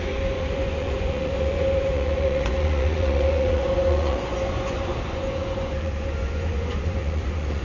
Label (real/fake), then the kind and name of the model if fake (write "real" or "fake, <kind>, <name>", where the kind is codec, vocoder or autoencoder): fake, vocoder, Vocos